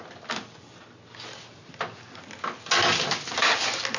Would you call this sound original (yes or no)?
yes